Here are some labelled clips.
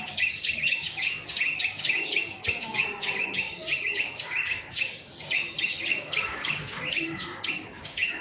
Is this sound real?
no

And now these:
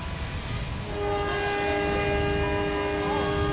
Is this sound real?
yes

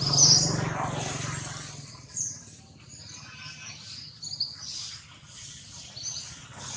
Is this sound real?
yes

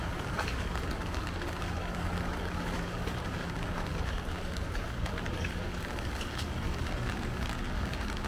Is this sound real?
no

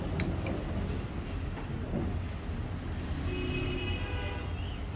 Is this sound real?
yes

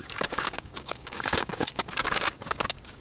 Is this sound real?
no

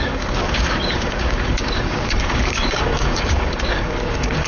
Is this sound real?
no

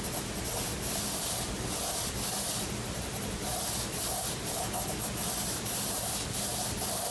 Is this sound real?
yes